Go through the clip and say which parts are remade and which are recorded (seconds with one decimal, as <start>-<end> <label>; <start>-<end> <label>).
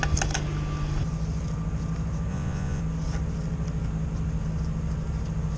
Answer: 0.0-2.3 recorded; 2.3-2.8 remade; 2.8-5.6 recorded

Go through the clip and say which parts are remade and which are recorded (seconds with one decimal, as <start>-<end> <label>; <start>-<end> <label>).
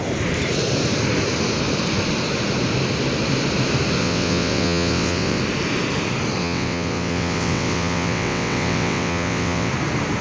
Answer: 0.0-4.0 recorded; 4.0-5.4 remade; 5.4-6.4 recorded; 6.4-9.7 remade; 9.7-10.2 recorded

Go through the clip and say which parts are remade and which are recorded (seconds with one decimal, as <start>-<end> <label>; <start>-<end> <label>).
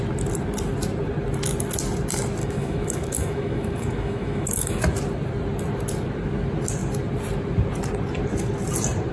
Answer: 0.0-2.4 recorded; 2.4-4.8 remade; 4.8-9.1 recorded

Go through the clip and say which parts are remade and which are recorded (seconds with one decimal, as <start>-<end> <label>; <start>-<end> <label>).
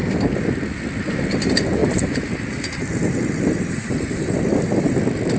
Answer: 0.0-1.8 recorded; 1.8-5.0 remade; 5.0-5.4 recorded